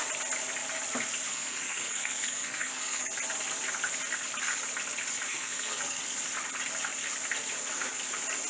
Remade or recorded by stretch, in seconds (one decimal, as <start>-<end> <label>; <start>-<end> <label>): 0.0-1.3 recorded; 1.3-3.1 remade; 3.1-5.3 recorded; 5.3-6.0 remade; 6.0-8.5 recorded